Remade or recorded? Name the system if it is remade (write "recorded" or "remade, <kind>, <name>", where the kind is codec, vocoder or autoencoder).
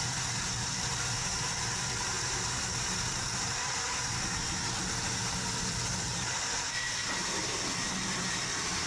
recorded